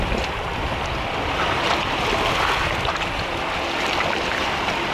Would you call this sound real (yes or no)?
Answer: no